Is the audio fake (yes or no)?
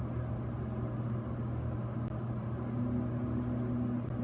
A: no